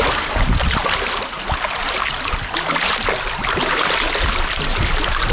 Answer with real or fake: real